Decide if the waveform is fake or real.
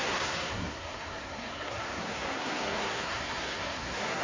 fake